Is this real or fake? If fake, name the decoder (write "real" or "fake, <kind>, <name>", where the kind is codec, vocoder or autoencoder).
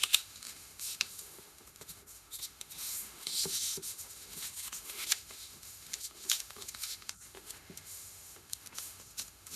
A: fake, autoencoder, DAC-VAE